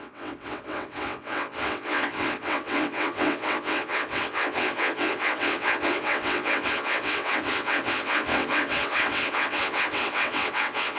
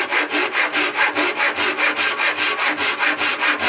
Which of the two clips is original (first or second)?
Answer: second